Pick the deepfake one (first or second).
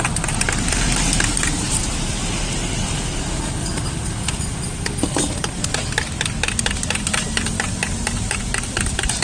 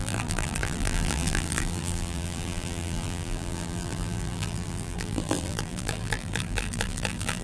second